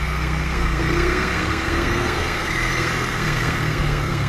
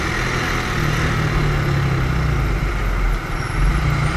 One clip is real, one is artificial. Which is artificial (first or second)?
first